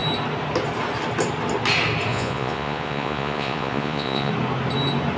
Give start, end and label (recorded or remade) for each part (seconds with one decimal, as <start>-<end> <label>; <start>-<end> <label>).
0.0-2.1 recorded; 2.1-4.3 remade; 4.3-5.2 recorded